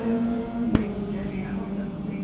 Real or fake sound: fake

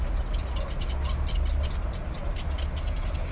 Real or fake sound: real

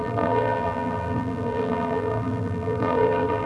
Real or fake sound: fake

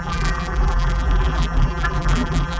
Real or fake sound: fake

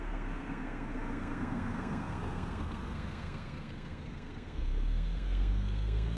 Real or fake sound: fake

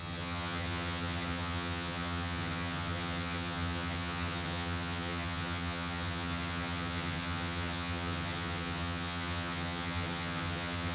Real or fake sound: fake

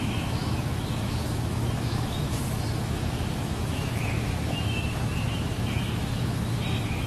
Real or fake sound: fake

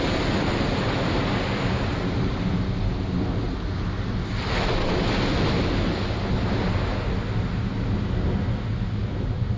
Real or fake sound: real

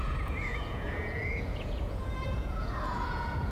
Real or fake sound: fake